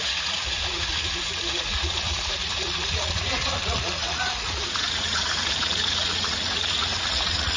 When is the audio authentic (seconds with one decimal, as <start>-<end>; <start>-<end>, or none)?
none